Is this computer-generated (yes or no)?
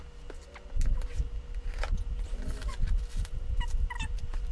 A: no